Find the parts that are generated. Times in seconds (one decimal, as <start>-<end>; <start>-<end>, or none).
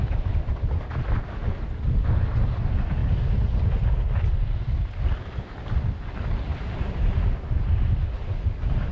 none